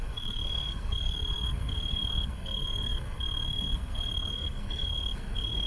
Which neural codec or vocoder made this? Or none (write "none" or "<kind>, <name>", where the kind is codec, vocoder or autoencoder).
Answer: codec, SNAC